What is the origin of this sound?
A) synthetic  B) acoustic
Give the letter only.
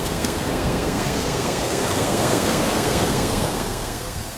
A